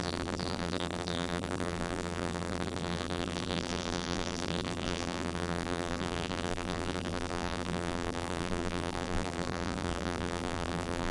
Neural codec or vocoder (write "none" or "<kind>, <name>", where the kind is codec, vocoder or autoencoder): vocoder, BigVGAN v2